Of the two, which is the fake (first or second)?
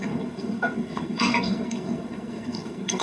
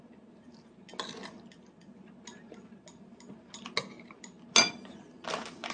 first